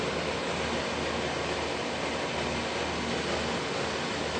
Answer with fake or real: real